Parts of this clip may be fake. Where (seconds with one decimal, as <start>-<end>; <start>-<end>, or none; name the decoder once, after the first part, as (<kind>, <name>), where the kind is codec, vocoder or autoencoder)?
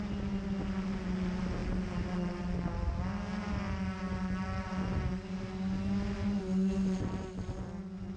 none